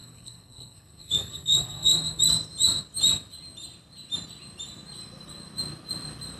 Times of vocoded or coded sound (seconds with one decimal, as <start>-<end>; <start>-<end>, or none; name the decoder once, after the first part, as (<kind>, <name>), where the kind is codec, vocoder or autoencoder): 0.0-2.2 (codec, SNAC)